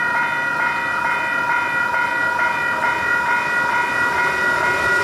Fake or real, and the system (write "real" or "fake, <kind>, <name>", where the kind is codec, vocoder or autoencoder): real